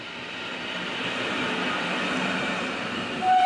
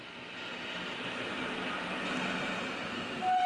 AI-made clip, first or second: first